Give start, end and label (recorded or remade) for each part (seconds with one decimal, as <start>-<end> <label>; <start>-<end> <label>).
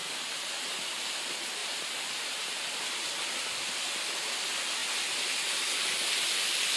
0.0-6.8 recorded